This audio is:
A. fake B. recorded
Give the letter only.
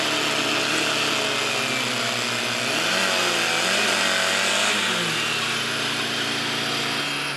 B